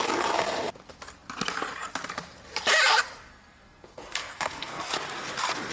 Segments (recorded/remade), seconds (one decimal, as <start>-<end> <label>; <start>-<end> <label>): 0.0-3.3 recorded; 3.3-4.9 remade; 4.9-5.7 recorded